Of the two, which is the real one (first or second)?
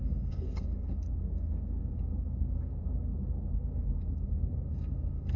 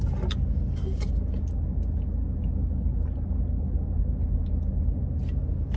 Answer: second